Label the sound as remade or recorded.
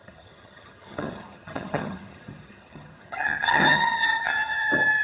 remade